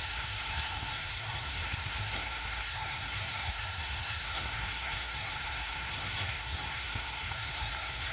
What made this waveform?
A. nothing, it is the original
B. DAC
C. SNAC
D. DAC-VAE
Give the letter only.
C